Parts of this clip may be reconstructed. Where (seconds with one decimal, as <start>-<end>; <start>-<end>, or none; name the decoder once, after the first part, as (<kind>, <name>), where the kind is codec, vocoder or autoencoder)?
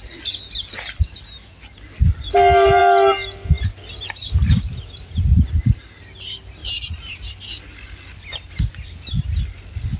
4.4-5.5 (vocoder, BigVGAN v2)